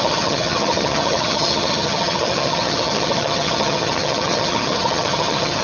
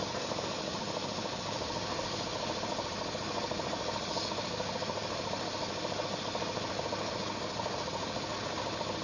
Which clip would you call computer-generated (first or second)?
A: first